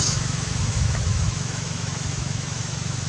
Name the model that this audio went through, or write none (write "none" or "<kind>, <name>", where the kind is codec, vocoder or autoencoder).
autoencoder, DAC-VAE